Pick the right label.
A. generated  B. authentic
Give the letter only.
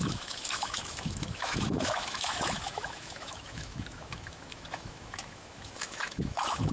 A